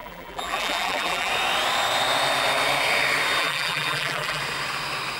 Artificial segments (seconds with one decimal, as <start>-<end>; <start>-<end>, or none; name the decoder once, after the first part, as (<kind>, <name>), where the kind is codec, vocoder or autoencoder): 0.0-1.3 (vocoder, BigVGAN v2); 3.4-4.4